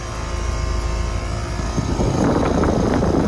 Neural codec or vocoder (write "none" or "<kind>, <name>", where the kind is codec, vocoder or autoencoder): none